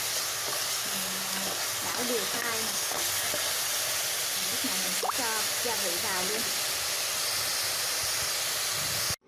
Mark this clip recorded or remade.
recorded